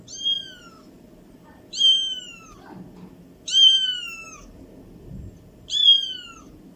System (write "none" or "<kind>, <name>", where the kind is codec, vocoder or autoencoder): none